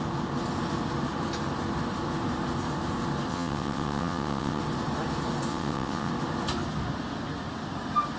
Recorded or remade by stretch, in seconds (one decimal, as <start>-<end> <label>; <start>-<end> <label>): 0.0-3.3 recorded; 3.3-4.6 remade; 4.6-5.5 recorded; 5.5-6.1 remade; 6.1-8.2 recorded